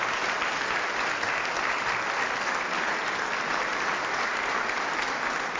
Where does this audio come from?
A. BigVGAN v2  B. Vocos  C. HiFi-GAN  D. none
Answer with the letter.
D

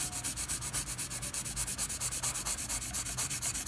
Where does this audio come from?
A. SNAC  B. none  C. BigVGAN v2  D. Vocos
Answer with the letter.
B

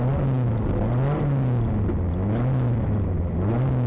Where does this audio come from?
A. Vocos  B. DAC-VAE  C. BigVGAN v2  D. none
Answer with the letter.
D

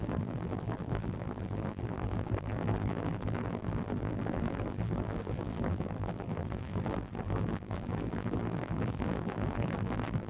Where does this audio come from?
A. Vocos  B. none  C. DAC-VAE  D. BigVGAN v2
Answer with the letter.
D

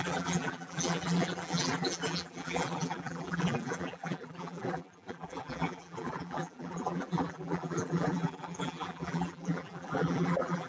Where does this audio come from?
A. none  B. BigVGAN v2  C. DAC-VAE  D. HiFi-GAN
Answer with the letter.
B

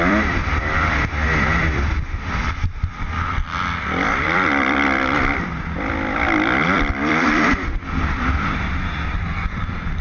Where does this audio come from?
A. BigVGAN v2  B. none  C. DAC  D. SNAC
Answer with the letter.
A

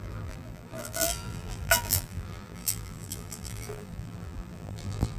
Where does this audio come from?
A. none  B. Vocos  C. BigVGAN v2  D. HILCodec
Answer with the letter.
C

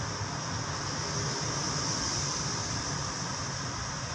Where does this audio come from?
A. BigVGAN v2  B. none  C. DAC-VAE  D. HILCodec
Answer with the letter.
B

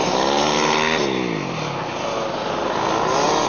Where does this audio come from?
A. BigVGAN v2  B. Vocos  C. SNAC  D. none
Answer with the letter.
D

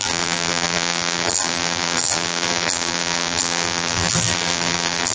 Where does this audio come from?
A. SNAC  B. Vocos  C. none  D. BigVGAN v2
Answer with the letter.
D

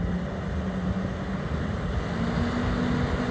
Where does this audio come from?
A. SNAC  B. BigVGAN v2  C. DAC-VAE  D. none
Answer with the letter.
D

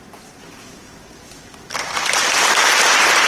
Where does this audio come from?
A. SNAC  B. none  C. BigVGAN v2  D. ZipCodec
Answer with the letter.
C